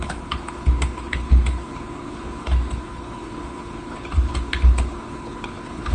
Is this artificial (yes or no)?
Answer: yes